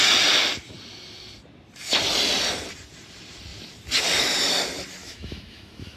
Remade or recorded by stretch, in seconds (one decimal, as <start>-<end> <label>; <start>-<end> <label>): 0.0-5.0 recorded; 5.0-6.0 remade